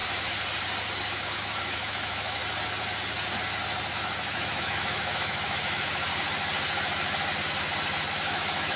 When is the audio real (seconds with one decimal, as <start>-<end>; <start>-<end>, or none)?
0.0-1.0; 2.4-3.9; 6.1-8.1